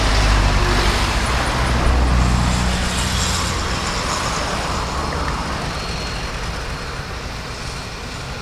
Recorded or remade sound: recorded